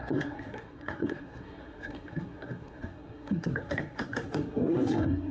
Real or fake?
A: fake